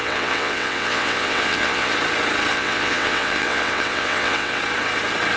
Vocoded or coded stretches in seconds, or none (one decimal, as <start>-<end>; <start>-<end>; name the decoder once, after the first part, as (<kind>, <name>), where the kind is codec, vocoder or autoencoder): 0.0-1.9 (vocoder, WaveNeXt); 2.5-4.6